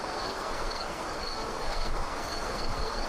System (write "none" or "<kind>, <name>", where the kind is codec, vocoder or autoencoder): codec, SNAC